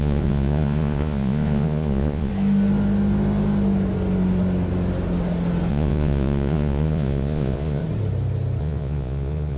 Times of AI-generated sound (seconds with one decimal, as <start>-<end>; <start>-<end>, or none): 0.0-2.3; 5.7-7.8; 8.6-9.6